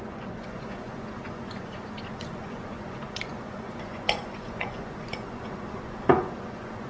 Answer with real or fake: fake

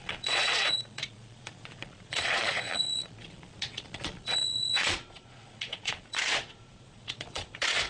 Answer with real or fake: fake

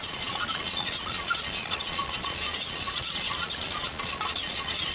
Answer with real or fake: fake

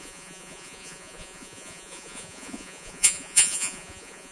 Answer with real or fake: fake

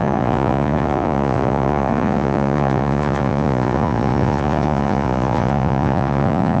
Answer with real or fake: fake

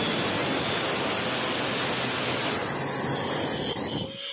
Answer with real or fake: real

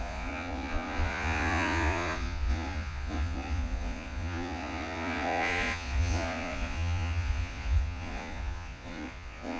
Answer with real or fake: fake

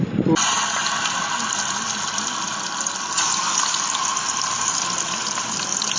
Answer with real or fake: real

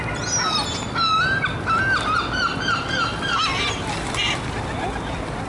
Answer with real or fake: real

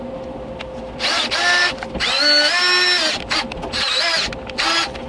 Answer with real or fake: real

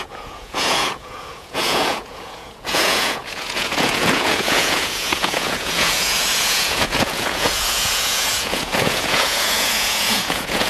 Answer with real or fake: fake